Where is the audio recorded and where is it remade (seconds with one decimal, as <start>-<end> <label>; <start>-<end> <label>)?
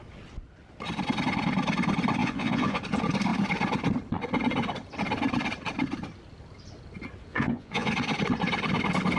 0.0-2.2 recorded; 2.2-2.8 remade; 2.8-7.3 recorded; 7.3-7.9 remade; 7.9-9.2 recorded